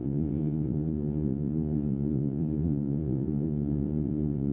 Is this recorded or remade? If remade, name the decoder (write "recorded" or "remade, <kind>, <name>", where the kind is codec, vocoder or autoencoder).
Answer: remade, vocoder, Vocos